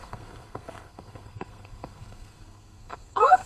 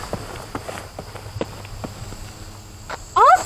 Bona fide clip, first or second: second